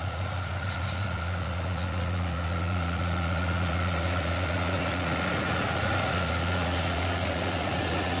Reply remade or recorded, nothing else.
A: remade